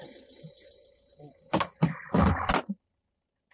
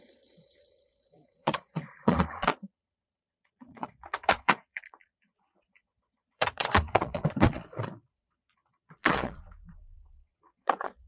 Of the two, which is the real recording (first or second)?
first